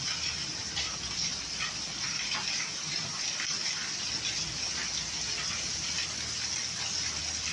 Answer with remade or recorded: recorded